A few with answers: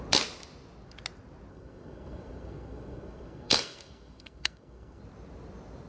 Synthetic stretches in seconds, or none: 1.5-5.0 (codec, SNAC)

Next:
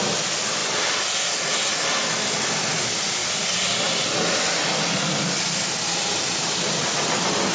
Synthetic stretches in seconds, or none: none

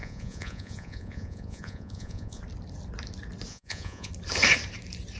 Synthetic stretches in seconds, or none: 0.0-2.4 (vocoder, Vocos); 3.5-4.1

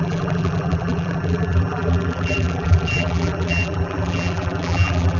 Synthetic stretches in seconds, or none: 0.0-5.2 (vocoder, BigVGAN v2)